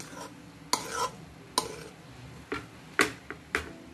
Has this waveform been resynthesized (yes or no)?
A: no